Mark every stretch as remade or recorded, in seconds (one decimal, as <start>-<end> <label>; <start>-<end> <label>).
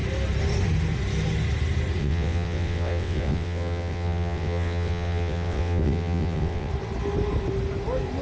0.0-2.0 recorded; 2.0-6.7 remade; 6.7-8.2 recorded